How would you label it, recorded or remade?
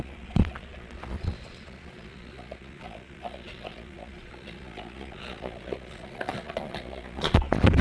remade